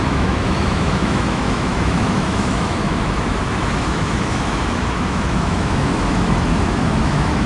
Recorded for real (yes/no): no